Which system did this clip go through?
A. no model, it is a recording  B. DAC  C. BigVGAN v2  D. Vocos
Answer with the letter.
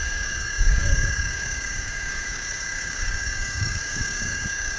B